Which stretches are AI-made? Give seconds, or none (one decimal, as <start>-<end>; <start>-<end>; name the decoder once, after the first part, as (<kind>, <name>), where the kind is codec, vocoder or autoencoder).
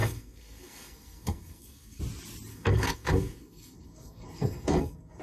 0.0-2.0 (codec, SNAC); 2.5-5.2